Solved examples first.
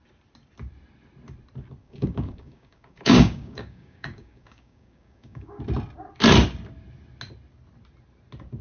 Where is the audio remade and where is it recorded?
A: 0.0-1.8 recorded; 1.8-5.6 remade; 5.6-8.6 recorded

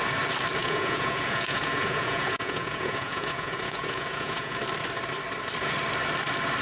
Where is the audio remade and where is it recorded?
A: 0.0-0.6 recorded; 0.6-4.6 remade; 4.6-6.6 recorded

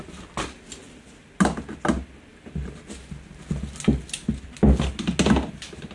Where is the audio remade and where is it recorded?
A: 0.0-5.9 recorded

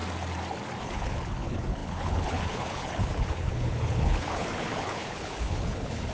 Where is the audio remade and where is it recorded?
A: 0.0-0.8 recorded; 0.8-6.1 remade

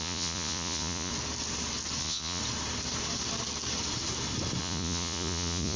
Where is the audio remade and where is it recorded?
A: 0.0-1.1 remade; 1.1-2.0 recorded; 2.0-2.4 remade; 2.4-4.6 recorded; 4.6-5.8 remade

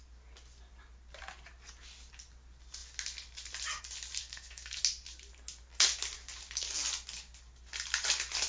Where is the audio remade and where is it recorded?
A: 0.0-4.2 recorded; 4.2-4.8 remade; 4.8-8.5 recorded